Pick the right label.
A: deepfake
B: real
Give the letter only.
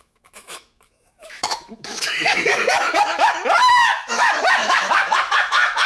A